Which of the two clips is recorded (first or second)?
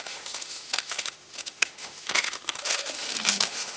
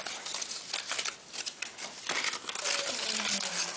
second